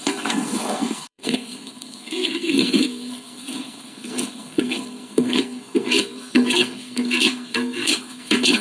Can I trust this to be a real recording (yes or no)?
no